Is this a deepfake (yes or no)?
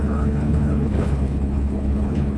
yes